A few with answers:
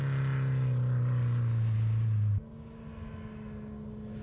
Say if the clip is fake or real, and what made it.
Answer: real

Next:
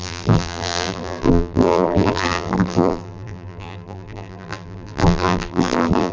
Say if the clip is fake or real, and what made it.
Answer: fake, vocoder, BigVGAN v2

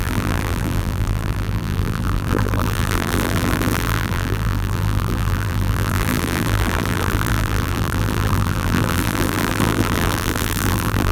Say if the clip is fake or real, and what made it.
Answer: fake, vocoder, BigVGAN v2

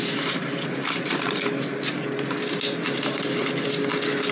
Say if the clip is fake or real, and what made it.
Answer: real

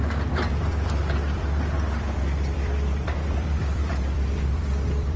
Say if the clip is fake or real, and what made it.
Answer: fake, vocoder, BigVGAN v2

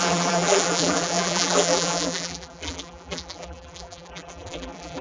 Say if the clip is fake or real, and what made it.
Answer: fake, vocoder, BigVGAN v2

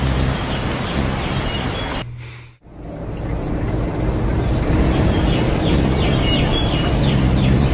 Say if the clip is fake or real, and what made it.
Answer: real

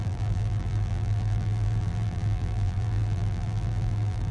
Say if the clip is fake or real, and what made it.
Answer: fake, vocoder, BigVGAN v2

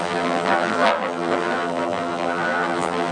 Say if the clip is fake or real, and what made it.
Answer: fake, vocoder, BigVGAN v2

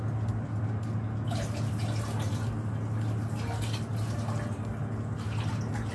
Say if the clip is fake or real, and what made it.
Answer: real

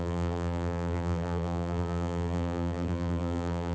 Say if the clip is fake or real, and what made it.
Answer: fake, vocoder, BigVGAN v2